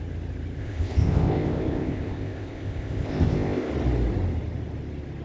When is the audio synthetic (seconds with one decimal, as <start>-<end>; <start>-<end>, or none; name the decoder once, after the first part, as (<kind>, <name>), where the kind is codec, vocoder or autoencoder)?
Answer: 0.6-3.7 (codec, ZipCodec)